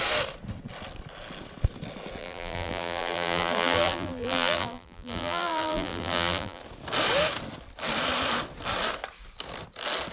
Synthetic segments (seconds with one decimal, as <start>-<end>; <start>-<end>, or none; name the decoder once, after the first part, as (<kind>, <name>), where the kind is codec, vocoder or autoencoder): 2.2-6.6 (vocoder, BigVGAN v2)